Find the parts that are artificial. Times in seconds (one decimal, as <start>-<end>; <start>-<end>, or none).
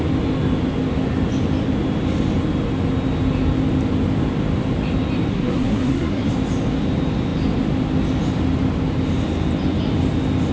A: 5.3-6.3